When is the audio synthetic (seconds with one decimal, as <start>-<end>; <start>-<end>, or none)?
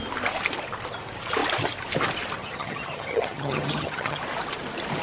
2.4-4.2